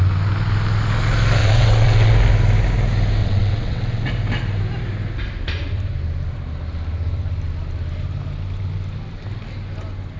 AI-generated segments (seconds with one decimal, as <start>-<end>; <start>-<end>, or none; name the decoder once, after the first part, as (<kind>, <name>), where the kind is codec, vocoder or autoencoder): 1.4-2.1 (vocoder, WaveNeXt); 3.2-4.1